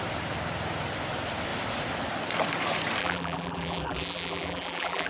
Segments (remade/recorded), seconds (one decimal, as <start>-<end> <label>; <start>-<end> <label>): 0.0-3.0 recorded; 3.0-5.1 remade